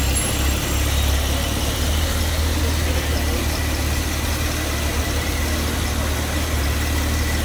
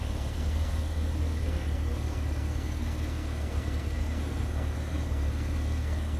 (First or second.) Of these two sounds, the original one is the first